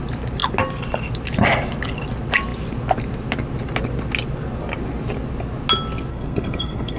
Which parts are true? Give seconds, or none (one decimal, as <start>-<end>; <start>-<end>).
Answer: 0.0-6.1